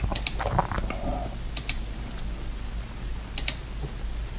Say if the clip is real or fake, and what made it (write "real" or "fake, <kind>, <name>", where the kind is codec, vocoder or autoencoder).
real